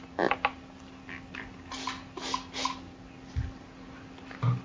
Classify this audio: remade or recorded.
recorded